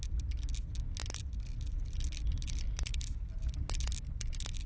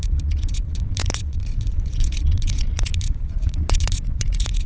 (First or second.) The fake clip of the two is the second